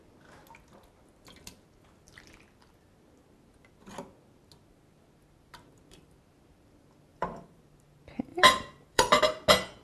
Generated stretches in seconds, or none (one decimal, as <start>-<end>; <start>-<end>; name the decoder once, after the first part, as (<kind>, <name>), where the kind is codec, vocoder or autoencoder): 7.1-7.6 (vocoder, BigVGAN v2); 8.3-9.2